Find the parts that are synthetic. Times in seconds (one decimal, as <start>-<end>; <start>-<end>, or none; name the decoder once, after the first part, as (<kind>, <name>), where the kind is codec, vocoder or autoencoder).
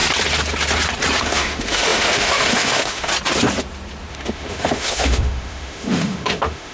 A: 1.2-3.1 (autoencoder, DAC-VAE); 4.1-6.7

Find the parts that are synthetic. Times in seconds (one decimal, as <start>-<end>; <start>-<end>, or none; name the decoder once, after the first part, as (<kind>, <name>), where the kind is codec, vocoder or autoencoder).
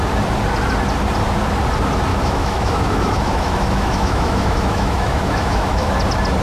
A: 2.1-5.9 (autoencoder, DAC-VAE)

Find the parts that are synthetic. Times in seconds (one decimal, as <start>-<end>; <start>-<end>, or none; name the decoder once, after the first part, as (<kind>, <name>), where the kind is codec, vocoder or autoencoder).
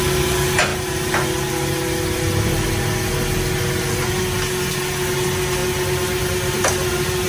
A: none